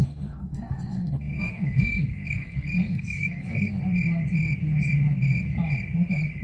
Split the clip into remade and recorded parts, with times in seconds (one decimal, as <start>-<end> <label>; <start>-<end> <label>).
0.0-3.8 remade; 3.8-6.4 recorded